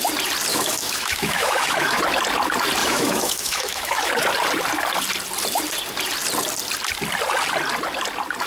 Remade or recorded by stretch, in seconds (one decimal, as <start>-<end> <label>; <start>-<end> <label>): 0.0-0.5 recorded; 0.5-2.0 remade; 2.0-2.8 recorded; 2.8-4.1 remade; 4.1-8.5 recorded